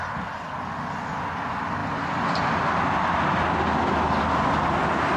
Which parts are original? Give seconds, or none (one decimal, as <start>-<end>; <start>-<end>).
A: 0.0-5.2